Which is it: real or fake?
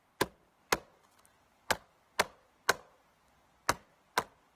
real